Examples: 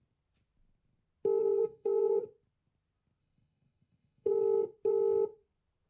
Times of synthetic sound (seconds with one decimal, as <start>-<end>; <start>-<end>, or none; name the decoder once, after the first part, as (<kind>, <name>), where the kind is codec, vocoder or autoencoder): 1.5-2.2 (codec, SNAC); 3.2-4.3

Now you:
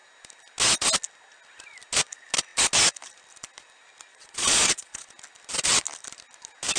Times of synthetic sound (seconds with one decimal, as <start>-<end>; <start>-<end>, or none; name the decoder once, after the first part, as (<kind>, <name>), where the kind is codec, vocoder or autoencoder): 4.1-5.1 (vocoder, Vocos)

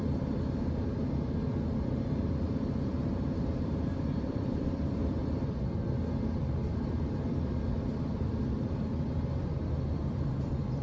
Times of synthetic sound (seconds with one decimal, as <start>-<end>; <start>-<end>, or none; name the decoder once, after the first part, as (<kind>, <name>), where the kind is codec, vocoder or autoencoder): 3.6-5.2 (vocoder, BigVGAN v2); 6.7-10.8